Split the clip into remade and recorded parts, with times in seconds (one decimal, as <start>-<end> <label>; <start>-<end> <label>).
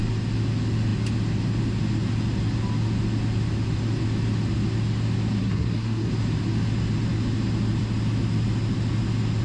0.0-5.4 recorded; 5.4-6.1 remade; 6.1-9.4 recorded